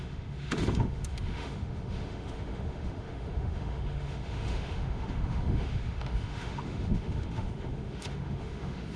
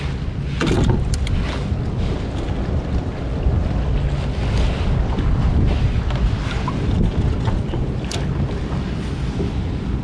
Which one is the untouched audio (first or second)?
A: second